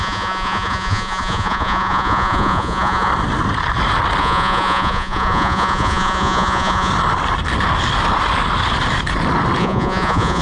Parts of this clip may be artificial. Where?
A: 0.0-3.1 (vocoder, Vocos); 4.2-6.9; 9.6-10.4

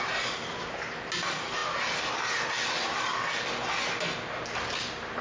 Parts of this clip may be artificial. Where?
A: none